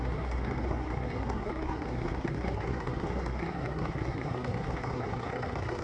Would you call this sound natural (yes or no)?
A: no